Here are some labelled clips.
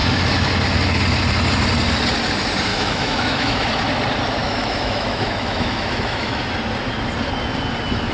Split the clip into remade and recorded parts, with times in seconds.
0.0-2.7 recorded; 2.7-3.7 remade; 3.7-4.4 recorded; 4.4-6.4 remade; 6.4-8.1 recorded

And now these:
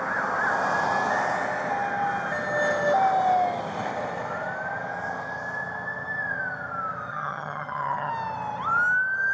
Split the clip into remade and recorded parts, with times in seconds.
0.0-7.1 recorded; 7.1-8.1 remade; 8.1-9.3 recorded

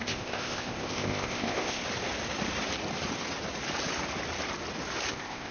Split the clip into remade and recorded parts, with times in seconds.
0.0-1.8 remade; 1.8-5.1 recorded; 5.1-5.5 remade

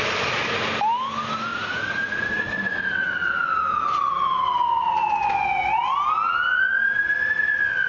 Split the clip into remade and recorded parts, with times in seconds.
0.0-1.5 recorded; 1.5-2.5 remade; 2.5-3.0 recorded; 3.0-3.7 remade; 3.7-7.9 recorded

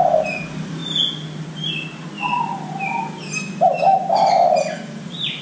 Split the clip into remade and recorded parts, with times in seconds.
0.0-5.4 recorded

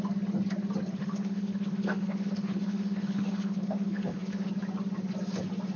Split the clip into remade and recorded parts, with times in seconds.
0.0-1.0 recorded; 1.0-4.5 remade; 4.5-5.8 recorded

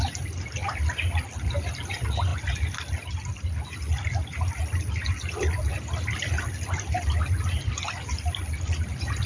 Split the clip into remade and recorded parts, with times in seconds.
0.0-9.3 recorded